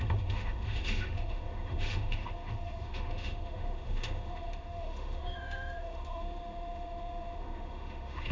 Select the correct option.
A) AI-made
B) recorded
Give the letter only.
A